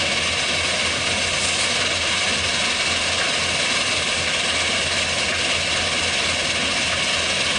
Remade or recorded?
recorded